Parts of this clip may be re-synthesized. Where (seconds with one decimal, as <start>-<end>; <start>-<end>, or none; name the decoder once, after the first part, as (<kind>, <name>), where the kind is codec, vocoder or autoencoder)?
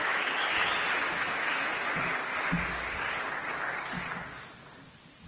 0.0-1.9 (autoencoder, DAC-VAE)